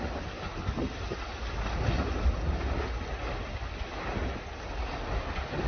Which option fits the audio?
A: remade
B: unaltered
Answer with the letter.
B